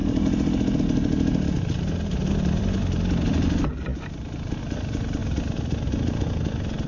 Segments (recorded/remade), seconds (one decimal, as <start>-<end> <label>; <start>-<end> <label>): 0.0-6.9 recorded